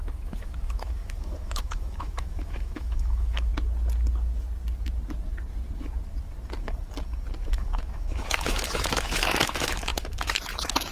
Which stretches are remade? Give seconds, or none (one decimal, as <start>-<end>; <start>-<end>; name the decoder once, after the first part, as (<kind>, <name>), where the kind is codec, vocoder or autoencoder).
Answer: 0.0-3.5 (autoencoder, DAC-VAE); 7.4-10.9